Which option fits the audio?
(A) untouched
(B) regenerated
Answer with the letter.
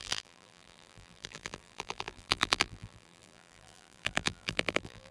B